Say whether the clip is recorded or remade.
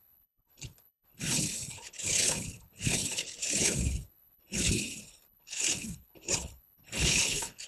remade